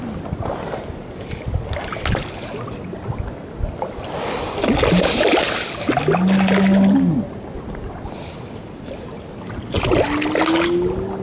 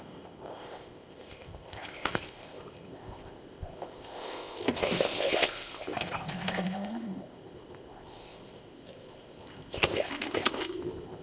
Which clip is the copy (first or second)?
second